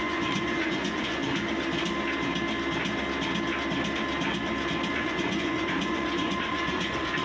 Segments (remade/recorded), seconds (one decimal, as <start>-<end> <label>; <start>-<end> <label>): 0.0-1.2 remade; 1.2-4.9 recorded; 4.9-7.2 remade